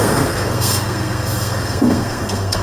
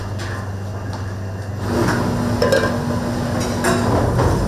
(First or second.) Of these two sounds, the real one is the second